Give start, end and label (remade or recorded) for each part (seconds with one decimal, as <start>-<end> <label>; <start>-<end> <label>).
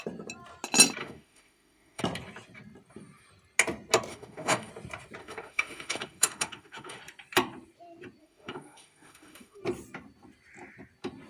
0.0-1.0 recorded; 1.0-2.0 remade; 2.0-4.1 recorded; 4.1-4.7 remade; 4.7-5.2 recorded; 5.2-7.0 remade; 7.0-8.2 recorded; 8.2-9.6 remade; 9.6-11.3 recorded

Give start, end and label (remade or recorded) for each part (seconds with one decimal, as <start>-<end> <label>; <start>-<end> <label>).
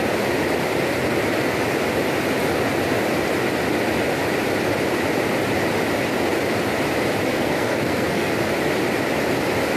0.0-7.3 recorded; 7.3-8.3 remade; 8.3-9.8 recorded